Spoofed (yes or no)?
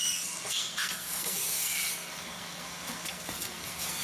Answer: yes